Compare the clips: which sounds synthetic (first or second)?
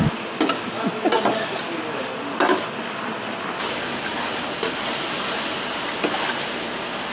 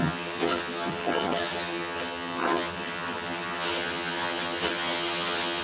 second